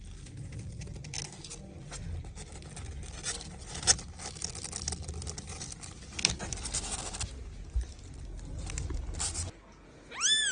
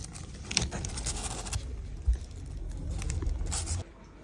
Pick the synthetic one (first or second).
second